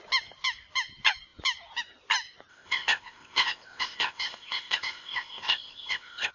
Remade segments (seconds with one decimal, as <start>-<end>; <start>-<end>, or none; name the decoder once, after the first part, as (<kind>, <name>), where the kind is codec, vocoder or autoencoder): 2.5-6.3 (codec, ZipCodec)